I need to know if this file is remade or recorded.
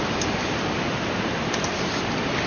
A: recorded